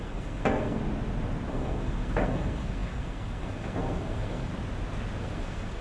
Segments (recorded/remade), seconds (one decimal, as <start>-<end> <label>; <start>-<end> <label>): 0.0-0.8 remade; 0.8-1.5 recorded; 1.5-4.5 remade; 4.5-5.2 recorded; 5.2-5.8 remade